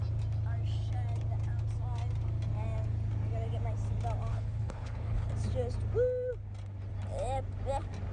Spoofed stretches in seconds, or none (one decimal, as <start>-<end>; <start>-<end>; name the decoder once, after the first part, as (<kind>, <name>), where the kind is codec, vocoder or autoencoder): 4.3-5.3 (codec, HILCodec)